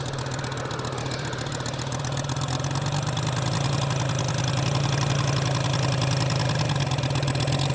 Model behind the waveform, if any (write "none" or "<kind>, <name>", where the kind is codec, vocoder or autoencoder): none